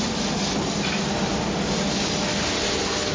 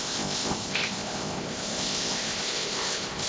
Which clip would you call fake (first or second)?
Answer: second